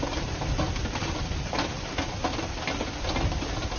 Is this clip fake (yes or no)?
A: no